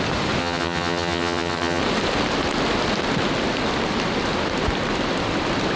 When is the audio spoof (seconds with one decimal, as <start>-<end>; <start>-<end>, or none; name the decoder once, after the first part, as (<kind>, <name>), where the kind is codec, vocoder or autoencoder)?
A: 0.4-1.8 (vocoder, HiFi-GAN)

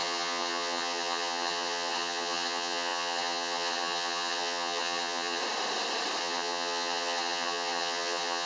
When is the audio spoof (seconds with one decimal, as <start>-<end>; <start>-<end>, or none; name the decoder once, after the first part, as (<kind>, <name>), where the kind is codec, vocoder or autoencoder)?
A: 0.0-5.4 (vocoder, HiFi-GAN); 6.2-8.5